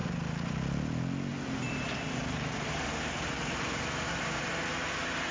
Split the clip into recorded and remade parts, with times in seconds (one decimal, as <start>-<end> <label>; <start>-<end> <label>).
0.0-0.6 remade; 0.6-1.3 recorded; 1.3-4.5 remade; 4.5-5.3 recorded